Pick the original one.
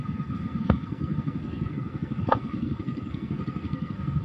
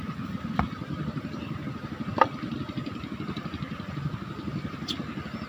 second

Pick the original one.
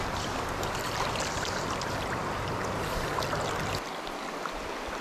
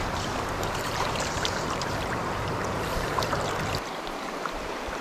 first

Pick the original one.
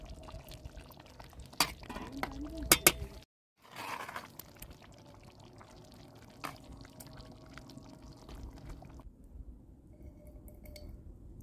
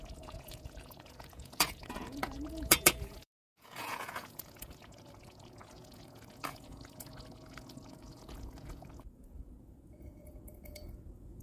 first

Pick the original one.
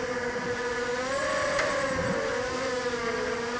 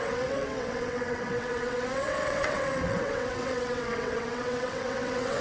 first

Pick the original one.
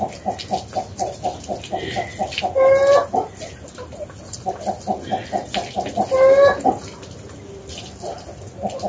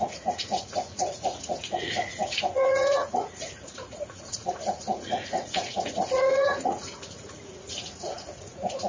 first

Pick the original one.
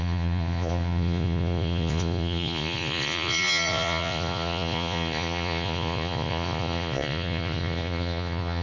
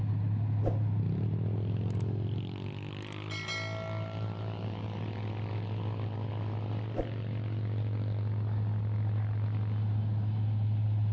second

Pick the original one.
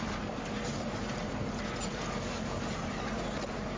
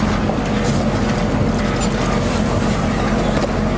second